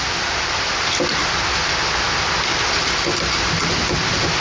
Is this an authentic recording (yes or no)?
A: yes